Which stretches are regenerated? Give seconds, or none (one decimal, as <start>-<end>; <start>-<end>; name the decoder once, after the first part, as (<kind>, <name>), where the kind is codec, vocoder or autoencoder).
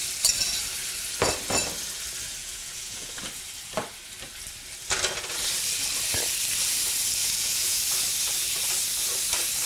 2.4-3.2 (vocoder, Vocos); 7.2-7.8